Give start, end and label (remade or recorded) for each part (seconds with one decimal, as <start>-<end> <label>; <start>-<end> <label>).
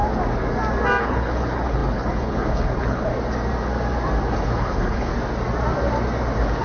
0.0-1.0 recorded; 1.0-3.1 remade; 3.1-4.3 recorded; 4.3-5.1 remade; 5.1-6.6 recorded